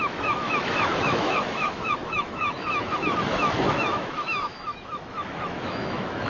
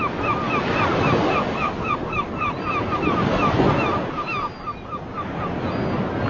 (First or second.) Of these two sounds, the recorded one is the second